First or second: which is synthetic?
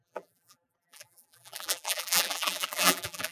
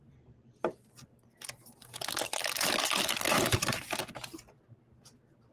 first